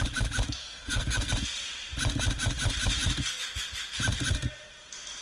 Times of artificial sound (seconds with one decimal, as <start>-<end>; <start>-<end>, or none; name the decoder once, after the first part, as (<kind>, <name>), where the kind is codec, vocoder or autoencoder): 0.6-1.3 (codec, SNAC)